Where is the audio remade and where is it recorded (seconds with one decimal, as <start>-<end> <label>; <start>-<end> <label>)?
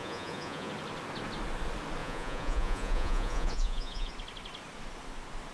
0.0-0.7 remade; 0.7-2.0 recorded; 2.0-4.1 remade; 4.1-5.5 recorded